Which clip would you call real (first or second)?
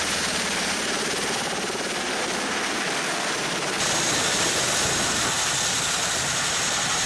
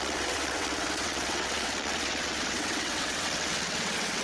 first